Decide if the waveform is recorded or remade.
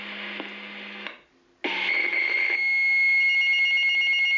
recorded